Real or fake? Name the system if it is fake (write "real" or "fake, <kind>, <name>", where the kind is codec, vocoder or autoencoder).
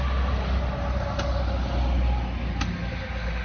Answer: real